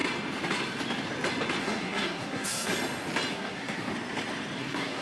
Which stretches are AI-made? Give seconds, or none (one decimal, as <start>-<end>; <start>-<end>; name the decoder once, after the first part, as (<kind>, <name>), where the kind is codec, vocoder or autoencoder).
1.6-2.7 (codec, SNAC); 3.3-3.9; 4.6-5.0